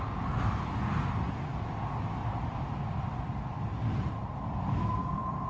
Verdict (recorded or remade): recorded